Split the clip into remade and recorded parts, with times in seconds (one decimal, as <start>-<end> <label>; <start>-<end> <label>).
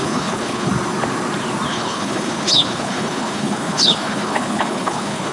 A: 0.0-0.7 remade; 0.7-1.7 recorded; 1.7-5.3 remade